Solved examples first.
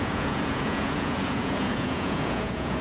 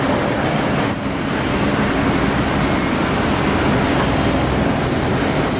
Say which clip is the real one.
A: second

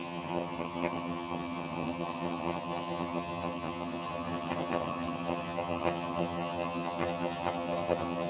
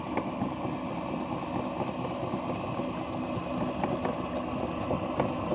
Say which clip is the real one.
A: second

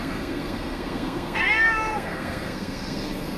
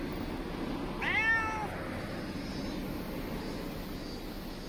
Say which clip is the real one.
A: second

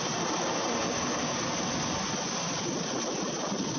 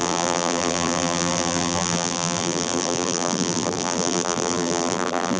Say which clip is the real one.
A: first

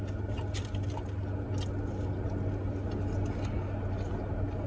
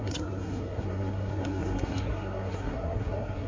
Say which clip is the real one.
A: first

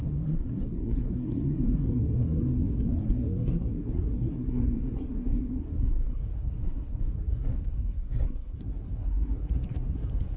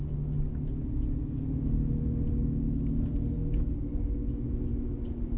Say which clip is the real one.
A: second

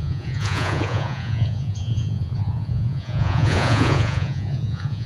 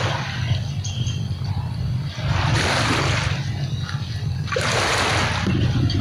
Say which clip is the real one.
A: second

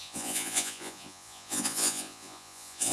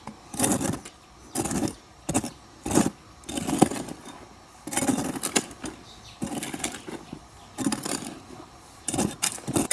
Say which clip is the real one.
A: second